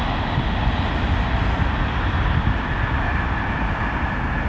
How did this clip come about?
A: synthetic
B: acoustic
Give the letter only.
B